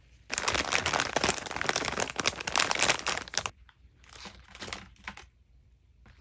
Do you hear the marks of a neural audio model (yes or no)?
no